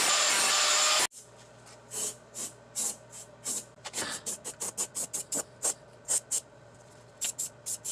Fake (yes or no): no